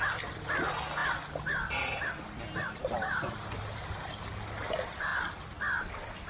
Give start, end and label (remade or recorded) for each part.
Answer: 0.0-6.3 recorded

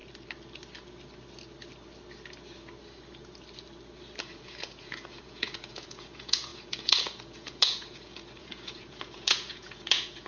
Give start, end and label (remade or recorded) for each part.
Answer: 0.0-4.2 recorded; 4.2-10.3 remade